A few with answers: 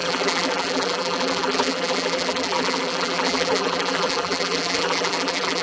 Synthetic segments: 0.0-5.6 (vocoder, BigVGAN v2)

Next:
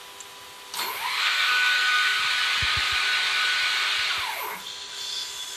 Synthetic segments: 1.1-2.2 (codec, SNAC)